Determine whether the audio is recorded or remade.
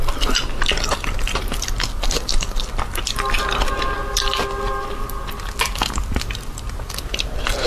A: recorded